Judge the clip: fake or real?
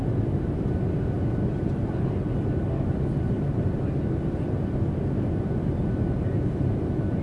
real